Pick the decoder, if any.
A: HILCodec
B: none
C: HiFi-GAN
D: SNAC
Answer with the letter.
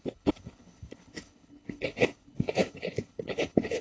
A